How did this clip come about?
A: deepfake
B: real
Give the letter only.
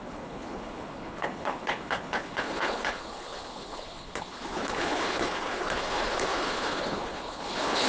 A